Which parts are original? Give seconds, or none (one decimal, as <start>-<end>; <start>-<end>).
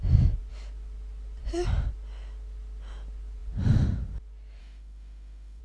0.0-4.6